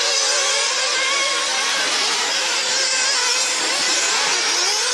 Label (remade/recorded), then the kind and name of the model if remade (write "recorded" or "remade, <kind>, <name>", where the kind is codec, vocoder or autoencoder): recorded